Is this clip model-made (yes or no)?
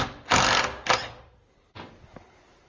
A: no